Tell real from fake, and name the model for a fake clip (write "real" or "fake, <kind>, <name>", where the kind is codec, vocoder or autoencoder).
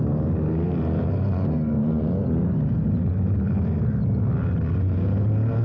real